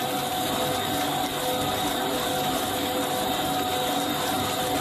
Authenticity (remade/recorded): recorded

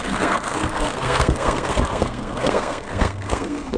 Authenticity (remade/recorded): remade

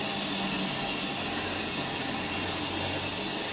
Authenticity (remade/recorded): recorded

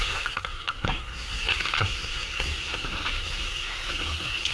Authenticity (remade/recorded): remade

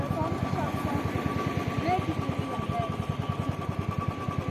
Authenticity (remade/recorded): recorded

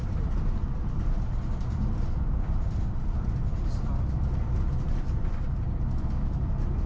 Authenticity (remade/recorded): recorded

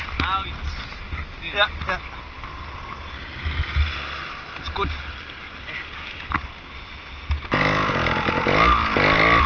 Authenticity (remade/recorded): recorded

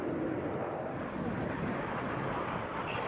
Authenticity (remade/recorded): recorded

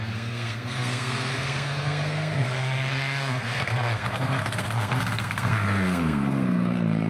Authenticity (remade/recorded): remade